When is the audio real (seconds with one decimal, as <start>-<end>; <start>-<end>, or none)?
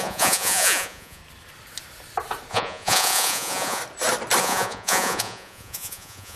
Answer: 1.2-2.5; 3.8-4.4